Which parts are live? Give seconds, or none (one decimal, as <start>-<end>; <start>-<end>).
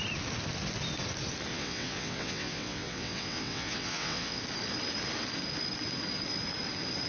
0.0-1.5; 4.4-7.1